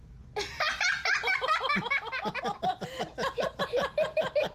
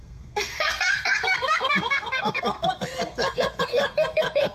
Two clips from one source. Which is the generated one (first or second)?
second